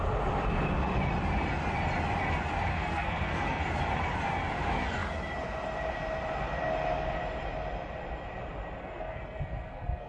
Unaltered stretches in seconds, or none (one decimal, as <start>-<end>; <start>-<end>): 0.0-2.7; 3.6-8.8